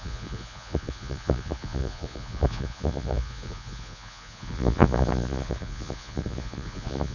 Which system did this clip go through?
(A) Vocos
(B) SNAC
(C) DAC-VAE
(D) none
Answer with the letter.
A